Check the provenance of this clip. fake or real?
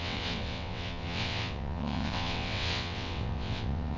fake